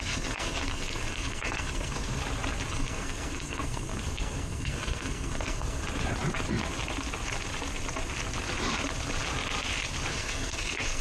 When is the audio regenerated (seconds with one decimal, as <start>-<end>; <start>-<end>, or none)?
0.0-2.2; 2.7-5.8; 10.1-11.0